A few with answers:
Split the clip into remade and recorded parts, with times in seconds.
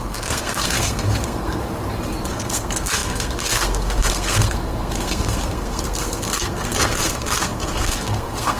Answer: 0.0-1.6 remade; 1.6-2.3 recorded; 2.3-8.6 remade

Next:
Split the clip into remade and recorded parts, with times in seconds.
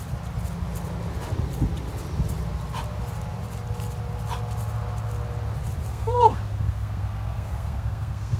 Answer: 0.0-5.9 recorded; 5.9-8.4 remade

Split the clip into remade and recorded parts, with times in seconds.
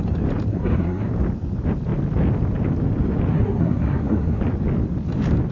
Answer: 0.0-0.5 recorded; 0.5-1.1 remade; 1.1-3.3 recorded; 3.3-4.4 remade; 4.4-5.5 recorded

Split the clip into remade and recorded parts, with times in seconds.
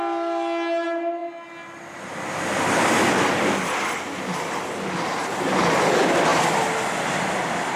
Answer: 0.0-7.8 recorded